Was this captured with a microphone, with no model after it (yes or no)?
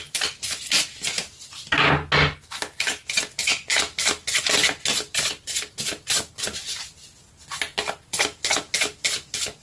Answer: yes